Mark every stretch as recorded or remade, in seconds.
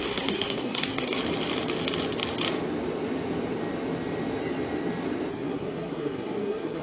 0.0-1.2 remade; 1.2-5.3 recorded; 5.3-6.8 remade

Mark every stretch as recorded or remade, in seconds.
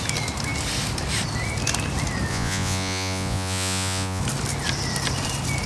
0.0-2.3 recorded; 2.3-4.2 remade; 4.2-5.7 recorded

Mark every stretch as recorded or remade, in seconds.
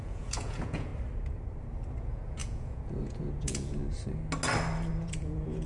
0.0-0.9 remade; 0.9-2.0 recorded; 2.0-3.8 remade; 3.8-4.9 recorded; 4.9-5.7 remade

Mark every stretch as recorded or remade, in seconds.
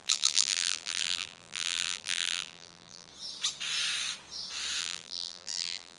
0.0-3.1 remade; 3.1-4.8 recorded; 4.8-6.0 remade